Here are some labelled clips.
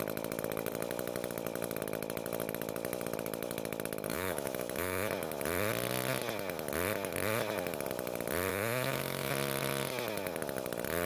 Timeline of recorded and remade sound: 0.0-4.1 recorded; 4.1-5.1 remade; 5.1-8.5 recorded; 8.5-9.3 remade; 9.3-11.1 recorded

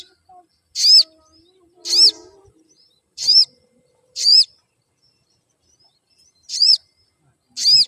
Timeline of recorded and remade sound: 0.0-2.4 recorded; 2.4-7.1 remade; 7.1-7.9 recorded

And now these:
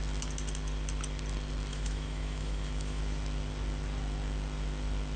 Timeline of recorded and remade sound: 0.0-1.7 recorded; 1.7-3.0 remade; 3.0-5.2 recorded